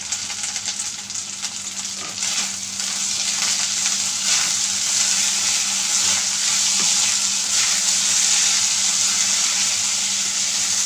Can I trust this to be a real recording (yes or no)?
yes